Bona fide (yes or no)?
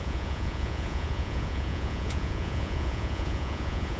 no